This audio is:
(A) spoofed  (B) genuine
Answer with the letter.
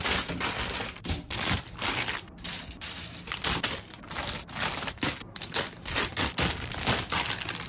B